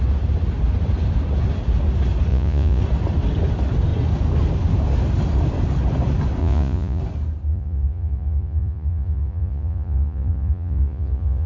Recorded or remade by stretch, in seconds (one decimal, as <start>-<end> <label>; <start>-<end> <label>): 0.0-2.3 recorded; 2.3-2.8 remade; 2.8-6.4 recorded; 6.4-7.0 remade; 7.0-7.5 recorded; 7.5-11.5 remade